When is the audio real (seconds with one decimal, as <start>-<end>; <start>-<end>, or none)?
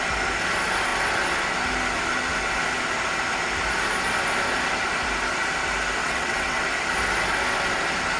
0.0-6.0; 6.6-8.2